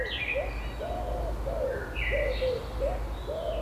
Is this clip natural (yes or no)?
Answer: yes